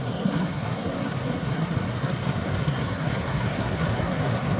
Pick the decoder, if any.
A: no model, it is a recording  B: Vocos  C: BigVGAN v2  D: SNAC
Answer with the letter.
D